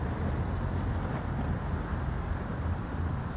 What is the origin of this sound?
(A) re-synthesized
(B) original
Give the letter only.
B